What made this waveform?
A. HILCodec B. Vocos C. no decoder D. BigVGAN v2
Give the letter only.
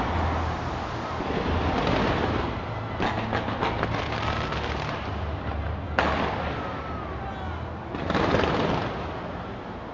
C